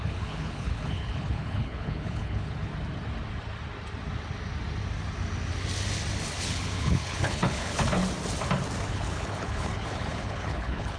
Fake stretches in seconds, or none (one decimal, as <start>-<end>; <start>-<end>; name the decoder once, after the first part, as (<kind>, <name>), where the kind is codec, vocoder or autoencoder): 0.0-2.7 (codec, HILCodec); 6.4-8.0; 8.9-11.0